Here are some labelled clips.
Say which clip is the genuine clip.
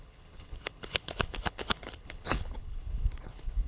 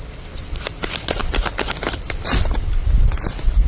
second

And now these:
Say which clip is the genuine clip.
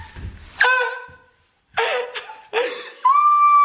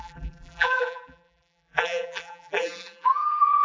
first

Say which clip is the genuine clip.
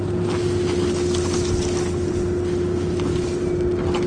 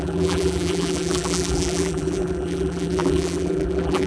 first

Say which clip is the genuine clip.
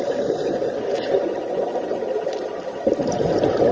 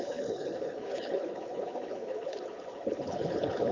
first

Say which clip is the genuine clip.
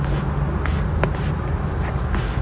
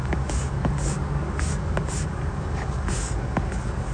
first